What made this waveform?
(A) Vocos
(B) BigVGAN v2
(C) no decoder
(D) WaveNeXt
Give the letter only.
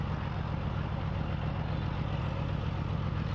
C